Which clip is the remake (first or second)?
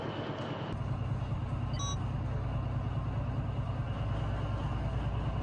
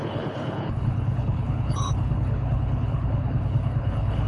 second